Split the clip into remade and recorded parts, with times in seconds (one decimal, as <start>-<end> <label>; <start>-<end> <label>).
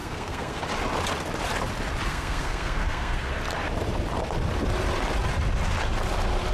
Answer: 0.0-0.6 remade; 0.6-2.1 recorded; 2.1-3.3 remade; 3.3-6.5 recorded